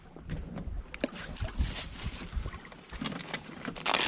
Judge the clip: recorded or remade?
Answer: recorded